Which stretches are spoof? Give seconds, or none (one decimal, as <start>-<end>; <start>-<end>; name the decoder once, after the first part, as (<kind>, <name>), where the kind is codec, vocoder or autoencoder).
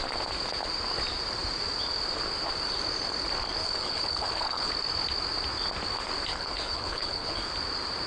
3.6-4.7 (codec, HILCodec); 6.3-7.4